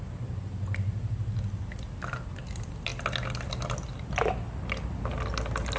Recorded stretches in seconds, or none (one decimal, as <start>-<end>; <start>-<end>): 0.0-5.8